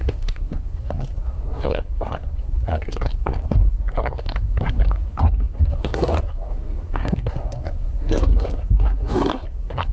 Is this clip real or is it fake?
fake